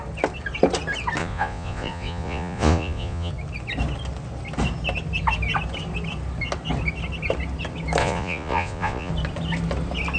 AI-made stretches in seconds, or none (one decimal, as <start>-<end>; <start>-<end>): 1.2-3.3; 8.0-9.1